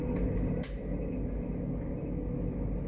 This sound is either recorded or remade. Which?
recorded